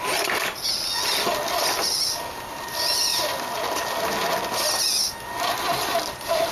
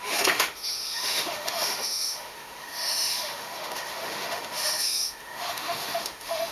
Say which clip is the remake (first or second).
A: second